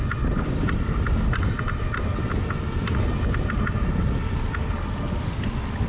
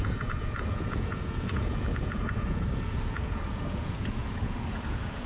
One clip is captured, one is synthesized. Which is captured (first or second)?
first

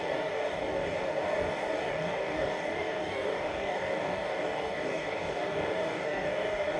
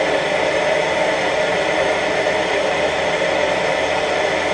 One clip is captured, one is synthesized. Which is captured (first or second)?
second